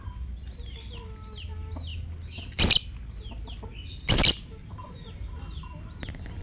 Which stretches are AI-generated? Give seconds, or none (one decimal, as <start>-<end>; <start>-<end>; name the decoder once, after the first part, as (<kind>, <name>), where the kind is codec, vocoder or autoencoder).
none